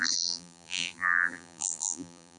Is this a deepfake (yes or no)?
yes